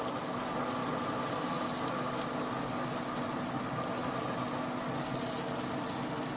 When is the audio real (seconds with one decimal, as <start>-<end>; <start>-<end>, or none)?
0.0-6.4